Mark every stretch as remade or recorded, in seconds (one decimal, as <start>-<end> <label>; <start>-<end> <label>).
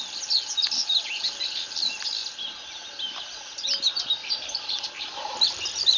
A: 0.0-4.2 recorded; 4.2-6.0 remade